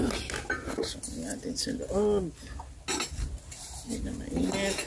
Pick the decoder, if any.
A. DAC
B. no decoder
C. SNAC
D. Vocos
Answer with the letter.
B